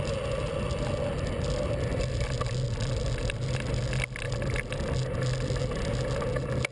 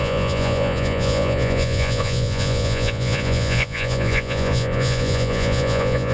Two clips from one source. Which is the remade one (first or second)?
second